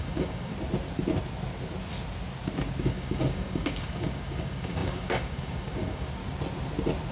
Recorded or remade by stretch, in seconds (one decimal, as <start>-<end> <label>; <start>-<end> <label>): 0.0-0.5 remade; 0.5-2.8 recorded; 2.8-6.2 remade; 6.2-7.1 recorded